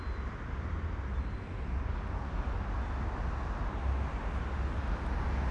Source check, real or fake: real